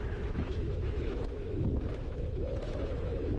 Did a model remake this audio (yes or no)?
yes